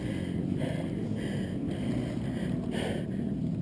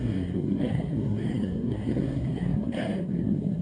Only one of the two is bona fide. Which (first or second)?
first